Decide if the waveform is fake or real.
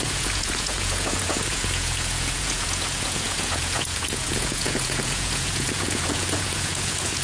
fake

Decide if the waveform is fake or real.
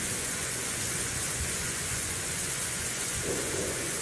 fake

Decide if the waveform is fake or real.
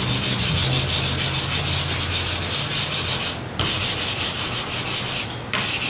real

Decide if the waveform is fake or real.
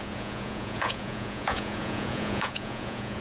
fake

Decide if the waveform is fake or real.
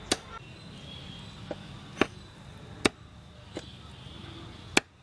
real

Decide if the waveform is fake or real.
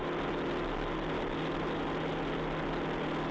real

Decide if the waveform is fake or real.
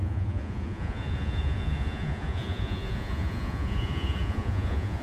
fake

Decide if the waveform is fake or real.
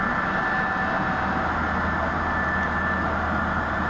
real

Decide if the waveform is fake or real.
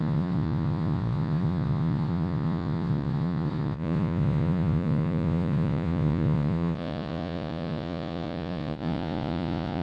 fake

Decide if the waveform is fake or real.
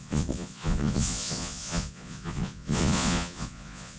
fake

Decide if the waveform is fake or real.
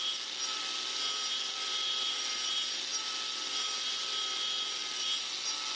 real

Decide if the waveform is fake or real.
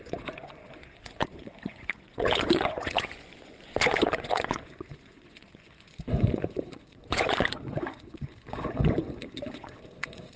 fake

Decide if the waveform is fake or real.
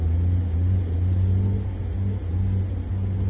real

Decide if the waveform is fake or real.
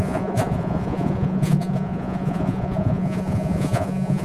fake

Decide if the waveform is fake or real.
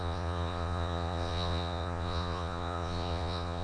fake